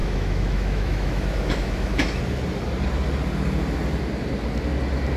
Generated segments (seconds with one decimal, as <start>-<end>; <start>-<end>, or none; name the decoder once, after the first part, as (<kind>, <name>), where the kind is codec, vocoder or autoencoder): 0.0-2.2 (autoencoder, DAC-VAE)